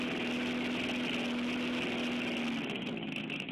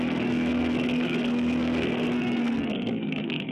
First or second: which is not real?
second